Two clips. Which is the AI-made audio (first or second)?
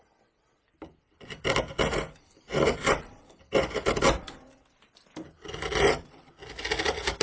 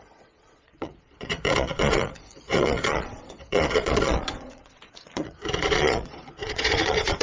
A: second